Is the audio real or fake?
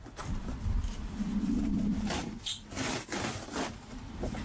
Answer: fake